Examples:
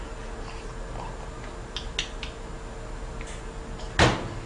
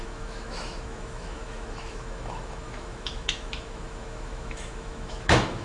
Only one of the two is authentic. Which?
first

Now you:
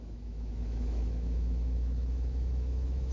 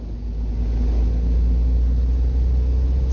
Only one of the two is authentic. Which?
second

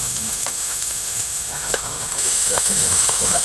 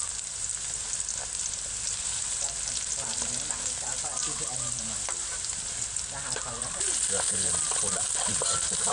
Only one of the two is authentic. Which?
second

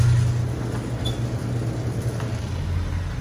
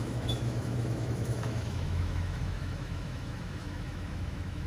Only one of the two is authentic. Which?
first